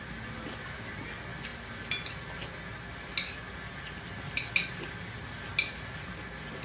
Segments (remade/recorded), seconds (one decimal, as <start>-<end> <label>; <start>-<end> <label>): 0.0-6.6 recorded